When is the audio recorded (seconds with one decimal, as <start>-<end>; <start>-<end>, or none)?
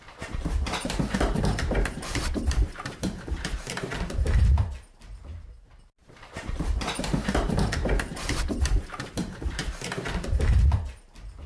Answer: 3.9-5.3; 9.6-11.5